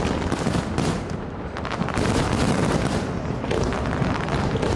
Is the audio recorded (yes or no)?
yes